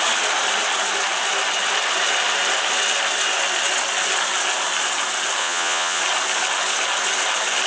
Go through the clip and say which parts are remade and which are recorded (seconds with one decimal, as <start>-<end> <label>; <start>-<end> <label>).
0.0-5.4 recorded; 5.4-6.0 remade; 6.0-7.7 recorded

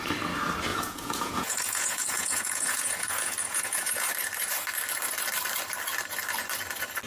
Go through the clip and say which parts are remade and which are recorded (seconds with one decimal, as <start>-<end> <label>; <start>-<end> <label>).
0.0-0.7 recorded; 0.7-4.1 remade; 4.1-7.1 recorded

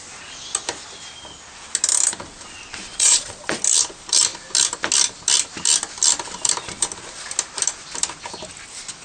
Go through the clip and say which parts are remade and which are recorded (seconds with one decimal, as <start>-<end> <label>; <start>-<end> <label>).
0.0-2.9 recorded; 2.9-3.6 remade; 3.6-9.0 recorded

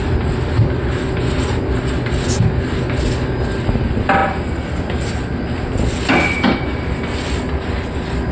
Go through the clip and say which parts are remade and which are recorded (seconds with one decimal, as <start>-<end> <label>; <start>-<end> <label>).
0.0-8.3 recorded

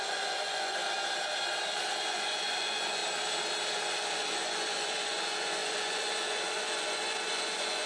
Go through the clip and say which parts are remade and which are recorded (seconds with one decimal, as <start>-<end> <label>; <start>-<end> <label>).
0.0-0.8 remade; 0.8-1.9 recorded; 1.9-3.0 remade; 3.0-3.7 recorded; 3.7-7.9 remade

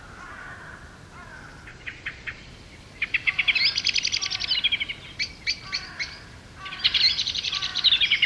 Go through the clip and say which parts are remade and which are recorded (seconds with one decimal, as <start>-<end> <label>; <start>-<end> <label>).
0.0-1.7 recorded; 1.7-2.5 remade; 2.5-8.3 recorded